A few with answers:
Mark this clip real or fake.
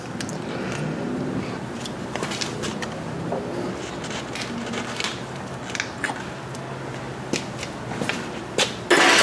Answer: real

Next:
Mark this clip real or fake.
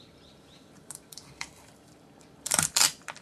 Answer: fake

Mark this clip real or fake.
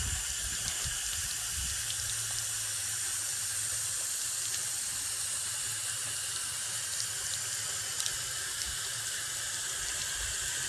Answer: real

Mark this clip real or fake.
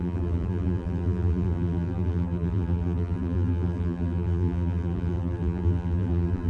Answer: fake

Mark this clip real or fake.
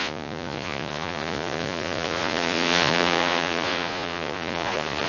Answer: fake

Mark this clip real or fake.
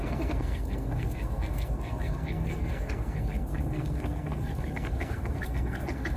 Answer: fake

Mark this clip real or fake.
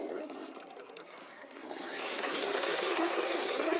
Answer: fake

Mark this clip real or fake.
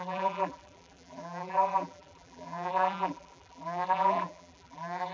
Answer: fake